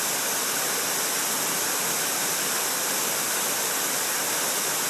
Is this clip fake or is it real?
real